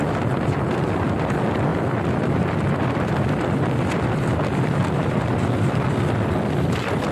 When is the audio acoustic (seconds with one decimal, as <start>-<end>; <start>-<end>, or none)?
0.0-1.7; 6.0-7.1